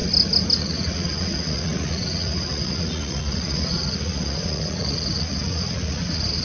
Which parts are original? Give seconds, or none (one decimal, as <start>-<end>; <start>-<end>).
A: 0.0-0.6